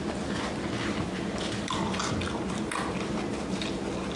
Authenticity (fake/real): real